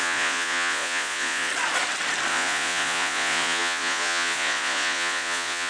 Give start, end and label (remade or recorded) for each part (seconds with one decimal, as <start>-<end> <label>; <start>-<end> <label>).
0.0-1.5 remade; 1.5-2.3 recorded; 2.3-5.7 remade